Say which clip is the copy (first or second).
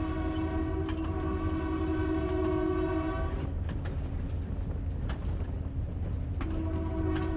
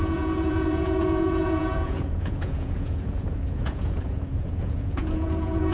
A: second